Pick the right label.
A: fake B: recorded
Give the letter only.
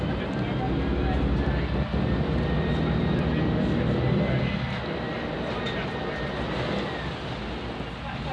B